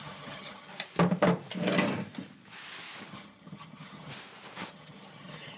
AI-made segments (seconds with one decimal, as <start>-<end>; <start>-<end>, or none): 0.0-0.7; 3.1-4.1; 4.7-5.6